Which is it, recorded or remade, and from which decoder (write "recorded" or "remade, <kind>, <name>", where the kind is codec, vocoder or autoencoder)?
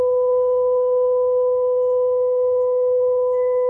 remade, codec, HILCodec